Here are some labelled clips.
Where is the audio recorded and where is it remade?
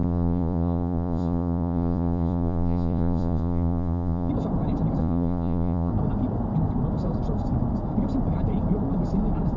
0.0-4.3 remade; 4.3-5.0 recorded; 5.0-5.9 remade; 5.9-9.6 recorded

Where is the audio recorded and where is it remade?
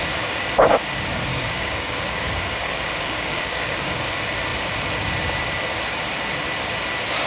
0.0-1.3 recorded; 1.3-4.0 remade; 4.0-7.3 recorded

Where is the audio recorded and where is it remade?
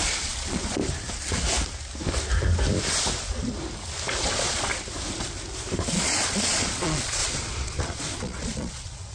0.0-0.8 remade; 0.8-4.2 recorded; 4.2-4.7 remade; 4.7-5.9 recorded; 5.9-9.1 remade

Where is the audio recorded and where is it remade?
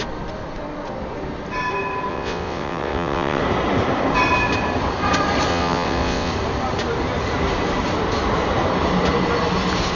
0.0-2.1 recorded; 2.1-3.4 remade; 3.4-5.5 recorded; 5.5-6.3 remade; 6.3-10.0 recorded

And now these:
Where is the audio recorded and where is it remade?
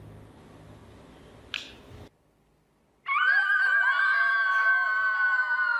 0.0-5.8 recorded